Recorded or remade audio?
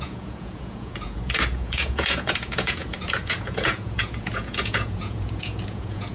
remade